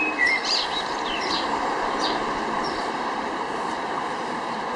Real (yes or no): no